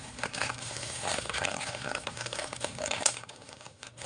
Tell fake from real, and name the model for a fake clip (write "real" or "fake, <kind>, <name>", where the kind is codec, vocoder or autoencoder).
fake, codec, SNAC